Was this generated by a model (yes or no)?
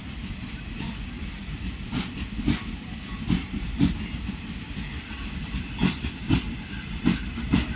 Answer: no